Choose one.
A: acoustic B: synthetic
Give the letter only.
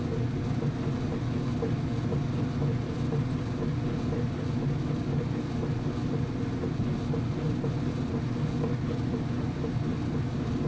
A